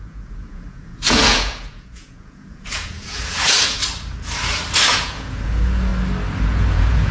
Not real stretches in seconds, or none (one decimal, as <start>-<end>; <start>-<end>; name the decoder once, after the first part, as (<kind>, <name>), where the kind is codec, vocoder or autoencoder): 0.0-3.8 (vocoder, Vocos); 4.9-5.9; 6.4-7.1